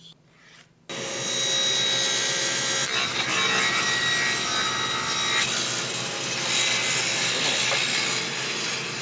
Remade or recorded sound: recorded